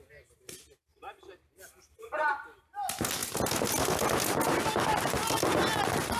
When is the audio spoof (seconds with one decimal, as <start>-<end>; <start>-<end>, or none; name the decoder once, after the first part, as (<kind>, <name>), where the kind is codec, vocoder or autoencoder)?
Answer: 0.9-2.3 (vocoder, BigVGAN v2)